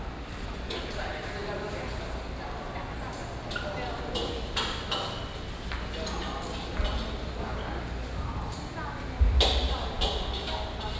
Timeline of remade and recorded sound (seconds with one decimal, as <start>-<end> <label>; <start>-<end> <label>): 0.0-11.0 recorded